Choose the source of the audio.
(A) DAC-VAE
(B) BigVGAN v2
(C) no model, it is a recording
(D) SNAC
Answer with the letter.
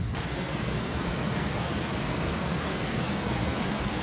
D